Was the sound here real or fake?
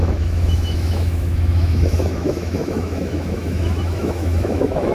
fake